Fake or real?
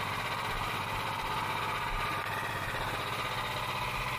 real